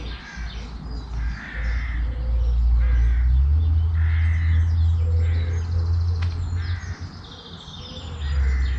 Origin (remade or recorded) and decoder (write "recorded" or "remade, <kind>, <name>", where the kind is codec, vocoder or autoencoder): recorded